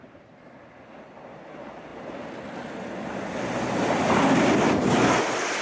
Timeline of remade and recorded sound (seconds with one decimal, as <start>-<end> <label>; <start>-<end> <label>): 0.0-5.6 recorded